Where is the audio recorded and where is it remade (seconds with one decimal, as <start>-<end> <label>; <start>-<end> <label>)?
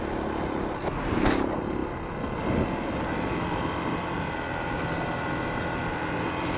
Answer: 0.0-6.6 recorded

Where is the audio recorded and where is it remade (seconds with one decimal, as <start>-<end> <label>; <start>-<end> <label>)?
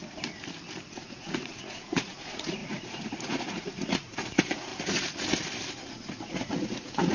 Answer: 0.0-0.9 recorded; 0.9-4.7 remade; 4.7-5.7 recorded; 5.7-7.1 remade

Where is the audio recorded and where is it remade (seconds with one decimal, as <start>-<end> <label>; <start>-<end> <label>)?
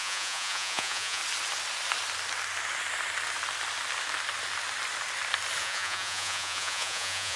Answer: 0.0-1.2 remade; 1.2-5.6 recorded; 5.6-7.4 remade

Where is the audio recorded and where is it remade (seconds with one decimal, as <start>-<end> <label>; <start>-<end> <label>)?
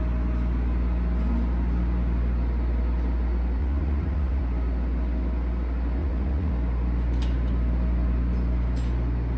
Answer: 0.0-3.6 recorded; 3.6-4.4 remade; 4.4-6.0 recorded; 6.0-6.5 remade; 6.5-9.4 recorded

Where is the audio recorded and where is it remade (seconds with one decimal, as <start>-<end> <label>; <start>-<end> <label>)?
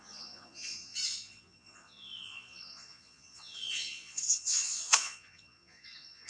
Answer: 0.0-6.3 remade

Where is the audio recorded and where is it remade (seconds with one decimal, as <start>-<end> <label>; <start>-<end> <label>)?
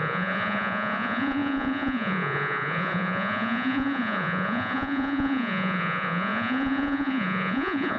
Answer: 0.0-8.0 remade